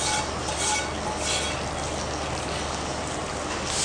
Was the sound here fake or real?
real